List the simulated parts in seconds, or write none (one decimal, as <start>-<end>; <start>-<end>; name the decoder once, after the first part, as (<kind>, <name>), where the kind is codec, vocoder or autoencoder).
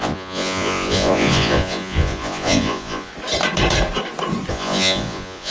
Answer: 0.0-3.1 (vocoder, Vocos); 4.5-5.5